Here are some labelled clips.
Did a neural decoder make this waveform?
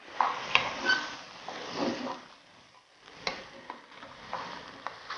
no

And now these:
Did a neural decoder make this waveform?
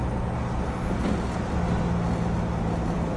no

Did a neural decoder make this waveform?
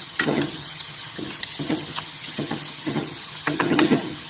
yes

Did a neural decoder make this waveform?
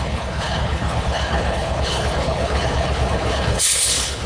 yes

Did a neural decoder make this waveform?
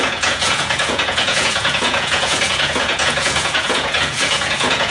yes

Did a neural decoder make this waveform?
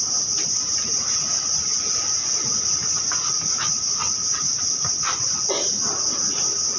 no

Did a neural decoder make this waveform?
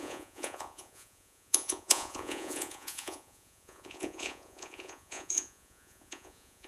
yes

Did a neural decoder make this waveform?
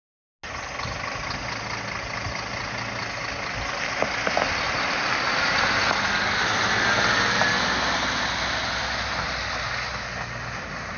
no